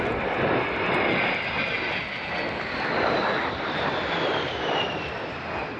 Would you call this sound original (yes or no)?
yes